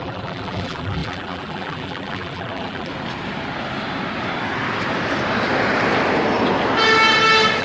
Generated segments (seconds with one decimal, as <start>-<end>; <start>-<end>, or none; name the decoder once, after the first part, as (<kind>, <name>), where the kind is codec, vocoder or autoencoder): 0.0-2.9 (vocoder, BigVGAN v2)